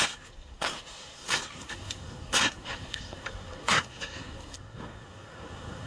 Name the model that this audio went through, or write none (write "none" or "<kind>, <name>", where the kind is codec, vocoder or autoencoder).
codec, SNAC